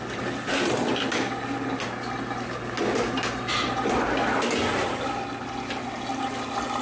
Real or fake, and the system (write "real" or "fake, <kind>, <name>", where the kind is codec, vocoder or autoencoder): real